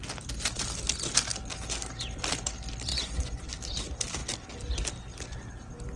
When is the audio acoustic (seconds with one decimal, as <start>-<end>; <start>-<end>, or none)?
0.0-2.9; 3.5-6.0